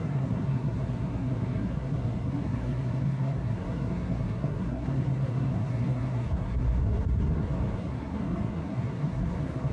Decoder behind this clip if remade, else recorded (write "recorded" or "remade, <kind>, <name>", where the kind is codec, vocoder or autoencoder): remade, codec, SNAC